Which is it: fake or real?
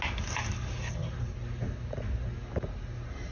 real